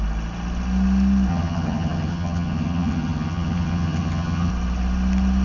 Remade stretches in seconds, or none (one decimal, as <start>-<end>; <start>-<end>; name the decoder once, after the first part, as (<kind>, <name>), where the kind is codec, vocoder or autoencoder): 1.3-4.5 (vocoder, HiFi-GAN)